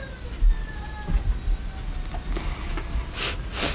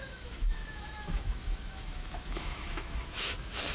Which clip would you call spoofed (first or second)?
second